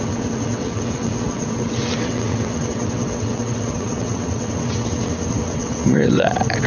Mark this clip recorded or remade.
remade